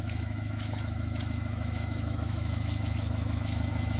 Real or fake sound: fake